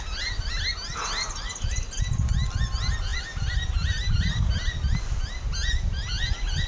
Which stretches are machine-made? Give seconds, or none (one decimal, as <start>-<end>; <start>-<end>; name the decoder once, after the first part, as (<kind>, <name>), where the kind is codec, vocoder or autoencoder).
none